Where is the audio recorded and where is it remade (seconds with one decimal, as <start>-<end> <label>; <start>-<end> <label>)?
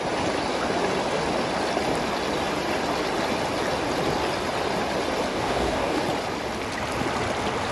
0.0-5.3 recorded; 5.3-6.0 remade; 6.0-7.7 recorded